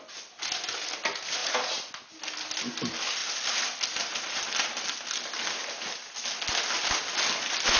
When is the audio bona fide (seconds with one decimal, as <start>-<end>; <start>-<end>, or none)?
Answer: 0.0-3.2; 4.0-7.8